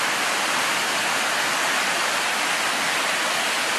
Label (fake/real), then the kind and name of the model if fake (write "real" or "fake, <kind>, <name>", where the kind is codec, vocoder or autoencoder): real